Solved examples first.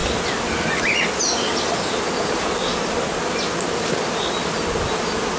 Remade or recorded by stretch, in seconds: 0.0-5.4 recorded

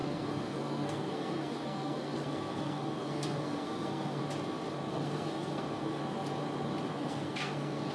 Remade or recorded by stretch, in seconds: 0.0-4.2 remade; 4.2-4.9 recorded; 4.9-6.0 remade; 6.0-6.9 recorded; 6.9-7.9 remade

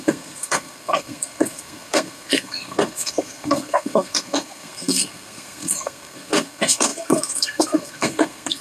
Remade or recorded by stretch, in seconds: 0.0-8.6 remade

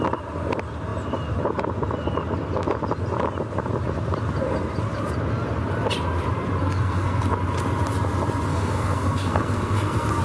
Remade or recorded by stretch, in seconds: 0.0-6.6 recorded; 6.6-7.3 remade; 7.3-8.5 recorded; 8.5-10.2 remade

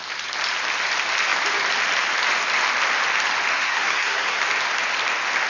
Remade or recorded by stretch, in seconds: 0.0-3.5 recorded; 3.5-4.4 remade; 4.4-5.5 recorded

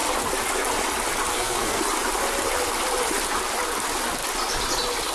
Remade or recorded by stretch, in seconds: 0.0-1.3 recorded; 1.3-1.8 remade; 1.8-5.1 recorded

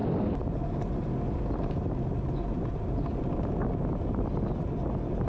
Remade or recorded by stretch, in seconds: 0.0-5.3 recorded

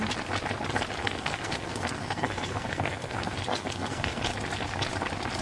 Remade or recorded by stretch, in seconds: 0.0-1.0 recorded; 1.0-4.2 remade; 4.2-5.4 recorded